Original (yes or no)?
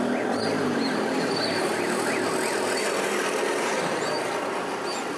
yes